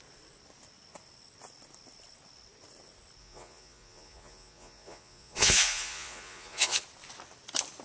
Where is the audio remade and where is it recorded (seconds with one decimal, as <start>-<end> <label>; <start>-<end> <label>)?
0.0-3.2 recorded; 3.2-6.8 remade; 6.8-7.8 recorded